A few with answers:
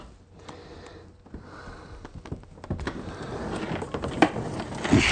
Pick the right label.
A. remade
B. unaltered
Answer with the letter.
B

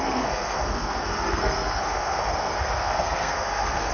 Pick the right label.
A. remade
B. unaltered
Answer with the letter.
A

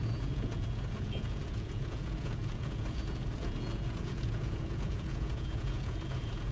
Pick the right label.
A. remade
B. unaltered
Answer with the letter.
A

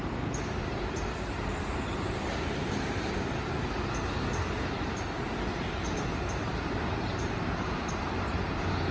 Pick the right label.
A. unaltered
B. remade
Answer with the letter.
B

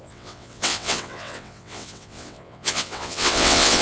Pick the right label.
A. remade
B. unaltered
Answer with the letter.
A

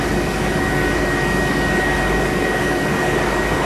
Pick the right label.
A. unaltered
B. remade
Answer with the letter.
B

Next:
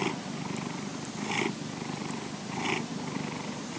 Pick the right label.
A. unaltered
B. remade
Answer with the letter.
A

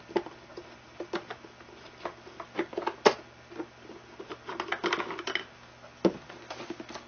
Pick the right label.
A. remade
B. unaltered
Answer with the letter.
B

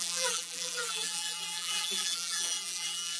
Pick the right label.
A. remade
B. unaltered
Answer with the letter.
A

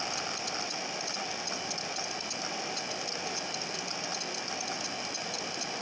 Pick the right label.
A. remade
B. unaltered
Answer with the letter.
B